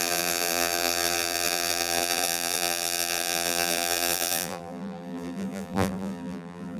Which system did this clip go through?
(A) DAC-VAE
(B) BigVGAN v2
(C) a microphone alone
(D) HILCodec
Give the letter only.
B